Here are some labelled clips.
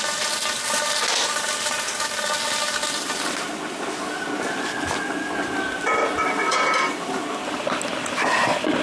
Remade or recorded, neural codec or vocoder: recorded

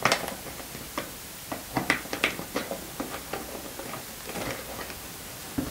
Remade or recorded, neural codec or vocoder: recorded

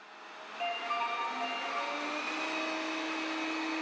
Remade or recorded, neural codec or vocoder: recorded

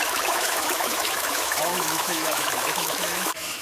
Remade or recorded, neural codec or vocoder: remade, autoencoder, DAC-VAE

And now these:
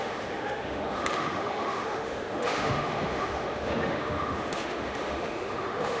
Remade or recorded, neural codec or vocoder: remade, autoencoder, DAC-VAE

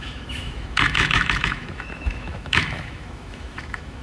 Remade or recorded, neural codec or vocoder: remade, autoencoder, DAC-VAE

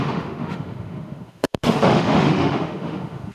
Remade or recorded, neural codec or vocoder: remade, autoencoder, DAC-VAE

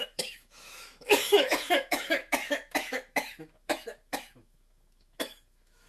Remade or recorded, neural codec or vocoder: remade, autoencoder, DAC-VAE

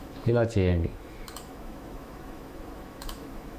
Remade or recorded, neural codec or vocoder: remade, autoencoder, DAC-VAE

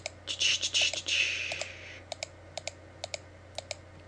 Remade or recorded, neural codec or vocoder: recorded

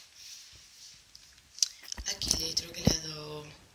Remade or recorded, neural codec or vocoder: recorded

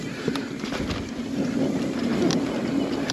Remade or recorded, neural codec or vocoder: recorded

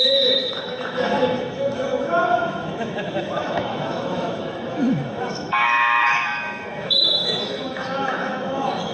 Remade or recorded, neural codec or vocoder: remade, autoencoder, DAC-VAE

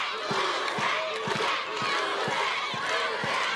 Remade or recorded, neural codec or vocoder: recorded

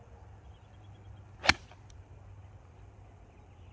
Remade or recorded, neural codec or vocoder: recorded